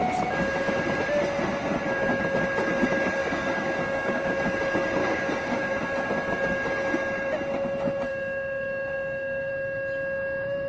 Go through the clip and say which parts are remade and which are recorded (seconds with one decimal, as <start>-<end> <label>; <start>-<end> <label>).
0.0-3.2 recorded; 3.2-4.3 remade; 4.3-5.0 recorded; 5.0-5.7 remade; 5.7-8.1 recorded; 8.1-9.5 remade; 9.5-10.7 recorded